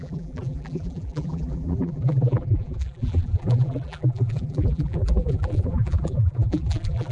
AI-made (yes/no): yes